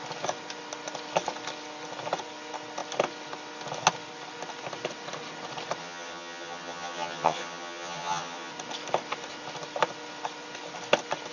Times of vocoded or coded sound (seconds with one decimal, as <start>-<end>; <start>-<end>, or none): 5.8-8.5